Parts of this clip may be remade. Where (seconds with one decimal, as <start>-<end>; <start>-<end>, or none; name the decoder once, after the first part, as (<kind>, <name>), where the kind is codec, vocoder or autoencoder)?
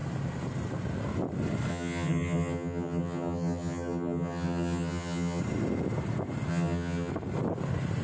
1.7-5.4 (vocoder, HiFi-GAN); 6.5-7.1